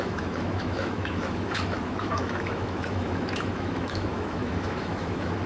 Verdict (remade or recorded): remade